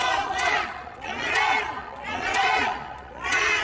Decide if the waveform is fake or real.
fake